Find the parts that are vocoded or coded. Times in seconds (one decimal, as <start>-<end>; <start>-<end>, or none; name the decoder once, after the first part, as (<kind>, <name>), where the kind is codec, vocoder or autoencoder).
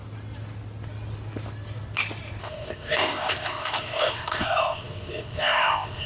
2.4-6.1 (codec, ZipCodec)